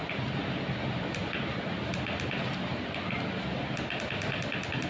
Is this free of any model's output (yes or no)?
yes